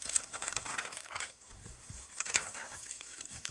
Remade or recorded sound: remade